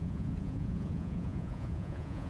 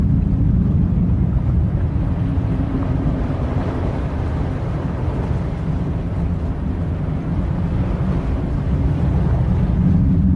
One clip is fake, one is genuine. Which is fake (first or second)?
first